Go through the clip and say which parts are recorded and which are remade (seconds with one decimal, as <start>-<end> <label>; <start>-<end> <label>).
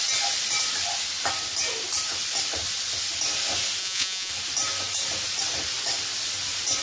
0.0-3.8 recorded; 3.8-4.3 remade; 4.3-6.8 recorded